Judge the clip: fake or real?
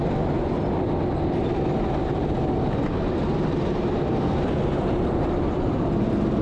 real